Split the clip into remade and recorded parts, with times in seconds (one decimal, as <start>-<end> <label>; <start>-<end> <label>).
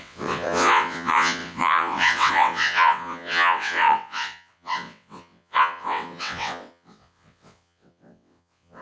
0.0-8.8 remade